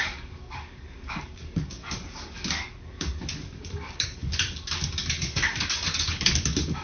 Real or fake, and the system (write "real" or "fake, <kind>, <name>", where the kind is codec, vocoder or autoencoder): fake, codec, DAC